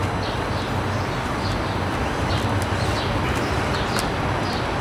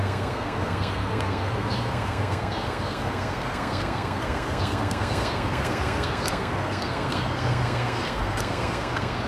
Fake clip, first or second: second